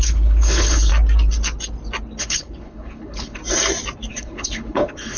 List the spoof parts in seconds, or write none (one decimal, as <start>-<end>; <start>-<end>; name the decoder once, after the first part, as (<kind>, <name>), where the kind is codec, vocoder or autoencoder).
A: 0.0-0.9 (codec, HILCodec); 2.2-3.4; 4.1-5.2